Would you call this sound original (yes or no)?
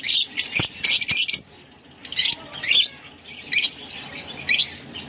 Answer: yes